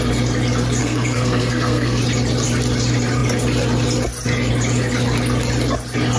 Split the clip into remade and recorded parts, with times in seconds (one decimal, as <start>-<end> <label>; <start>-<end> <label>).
0.0-0.8 recorded; 0.8-2.0 remade; 2.0-6.2 recorded